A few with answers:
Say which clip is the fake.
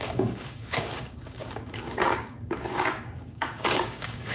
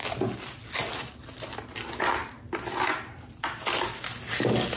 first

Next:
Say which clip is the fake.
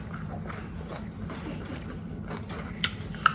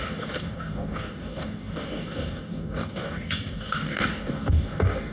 second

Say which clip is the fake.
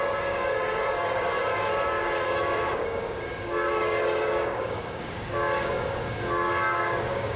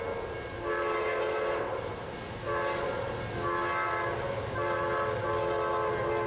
first